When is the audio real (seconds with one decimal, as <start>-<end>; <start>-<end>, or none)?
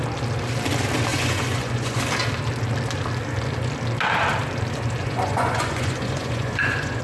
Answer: 0.0-1.1; 2.0-5.0